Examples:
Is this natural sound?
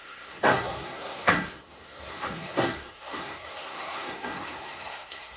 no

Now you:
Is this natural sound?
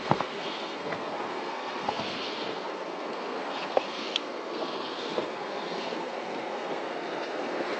no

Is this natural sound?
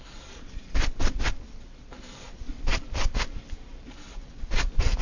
no